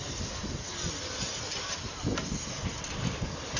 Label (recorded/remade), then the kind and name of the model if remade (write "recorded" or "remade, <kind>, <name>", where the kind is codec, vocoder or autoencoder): recorded